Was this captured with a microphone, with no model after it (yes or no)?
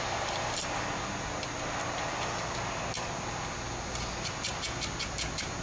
yes